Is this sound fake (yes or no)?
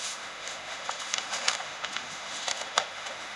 yes